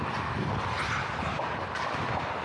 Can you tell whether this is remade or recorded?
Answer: recorded